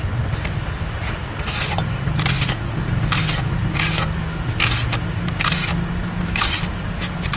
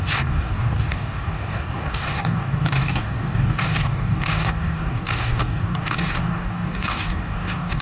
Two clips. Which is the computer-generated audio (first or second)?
second